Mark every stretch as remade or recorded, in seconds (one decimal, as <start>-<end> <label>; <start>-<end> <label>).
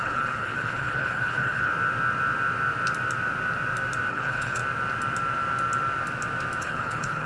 0.0-1.7 remade; 1.7-4.1 recorded; 4.1-4.6 remade; 4.6-6.6 recorded; 6.6-7.3 remade